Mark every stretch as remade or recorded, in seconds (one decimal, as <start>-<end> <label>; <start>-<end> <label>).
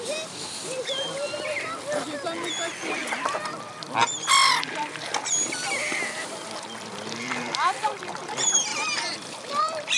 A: 0.0-8.7 remade; 8.7-9.6 recorded; 9.6-10.0 remade